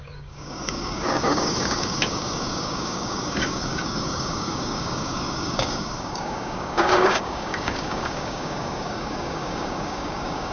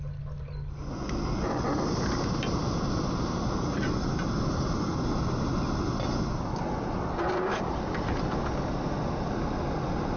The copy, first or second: first